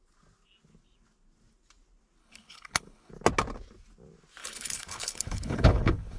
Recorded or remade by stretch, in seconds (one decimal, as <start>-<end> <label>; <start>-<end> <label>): 0.0-2.2 recorded; 2.2-3.1 remade; 3.1-4.4 recorded; 4.4-6.2 remade